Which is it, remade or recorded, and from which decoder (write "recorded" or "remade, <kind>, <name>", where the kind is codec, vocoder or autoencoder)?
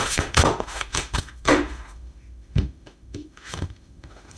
remade, autoencoder, DAC-VAE